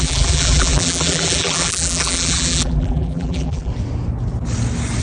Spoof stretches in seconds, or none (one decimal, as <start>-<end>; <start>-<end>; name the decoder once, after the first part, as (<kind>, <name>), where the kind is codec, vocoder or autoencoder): 0.0-3.7 (vocoder, BigVGAN v2)